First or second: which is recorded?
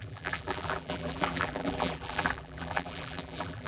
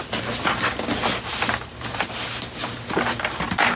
second